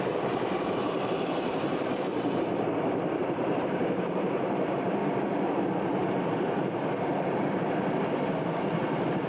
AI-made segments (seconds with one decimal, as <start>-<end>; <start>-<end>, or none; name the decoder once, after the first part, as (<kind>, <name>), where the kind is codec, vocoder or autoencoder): 0.0-2.1 (vocoder, BigVGAN v2); 3.2-5.0; 6.1-9.3